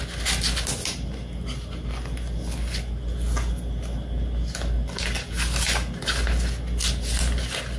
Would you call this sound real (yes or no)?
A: yes